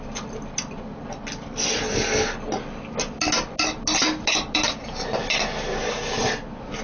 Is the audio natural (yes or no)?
yes